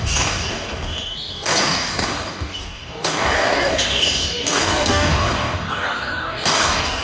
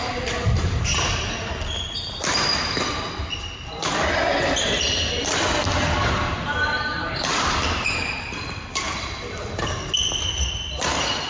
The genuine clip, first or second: second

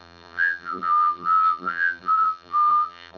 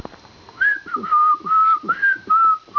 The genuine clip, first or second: second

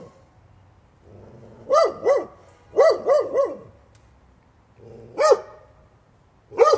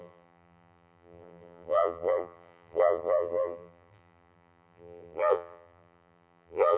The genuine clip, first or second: first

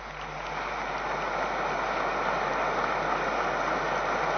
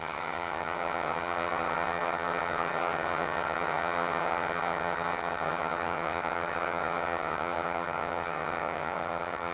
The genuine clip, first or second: first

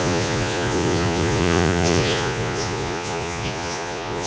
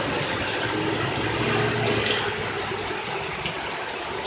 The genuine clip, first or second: second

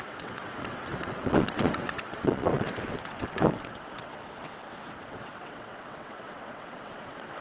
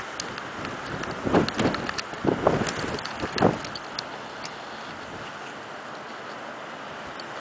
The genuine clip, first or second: second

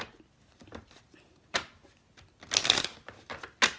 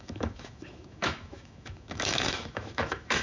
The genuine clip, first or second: first